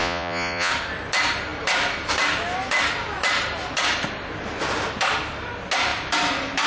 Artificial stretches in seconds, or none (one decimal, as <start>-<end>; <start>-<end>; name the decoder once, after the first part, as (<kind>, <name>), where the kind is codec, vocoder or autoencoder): 0.0-0.7 (vocoder, Vocos)